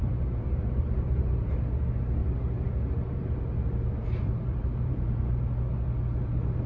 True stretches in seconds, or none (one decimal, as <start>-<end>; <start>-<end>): 1.5-2.2; 5.3-6.7